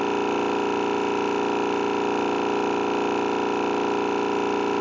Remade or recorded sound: recorded